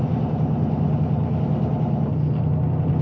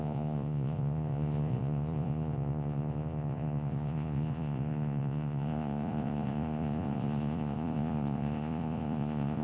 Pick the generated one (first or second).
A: second